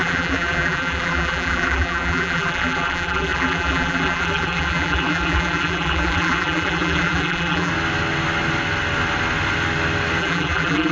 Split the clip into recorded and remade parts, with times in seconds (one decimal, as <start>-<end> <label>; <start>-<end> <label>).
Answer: 0.0-7.7 remade; 7.7-10.2 recorded; 10.2-10.9 remade